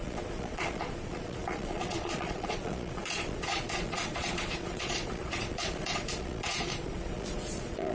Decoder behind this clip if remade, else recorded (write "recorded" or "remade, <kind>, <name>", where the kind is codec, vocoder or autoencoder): remade, vocoder, Vocos